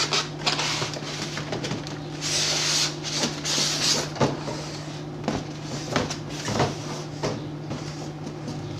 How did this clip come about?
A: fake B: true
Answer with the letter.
B